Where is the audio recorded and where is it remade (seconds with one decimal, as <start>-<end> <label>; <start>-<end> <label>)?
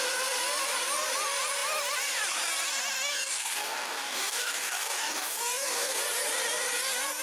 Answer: 0.0-3.1 recorded; 3.1-6.0 remade; 6.0-7.2 recorded